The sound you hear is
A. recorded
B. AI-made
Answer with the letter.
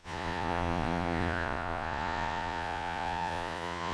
B